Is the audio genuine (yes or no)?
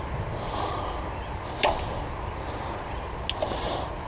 yes